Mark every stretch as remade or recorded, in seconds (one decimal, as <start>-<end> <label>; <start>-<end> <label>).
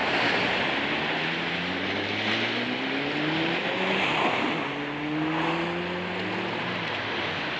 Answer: 0.0-3.6 remade; 3.6-6.6 recorded; 6.6-7.6 remade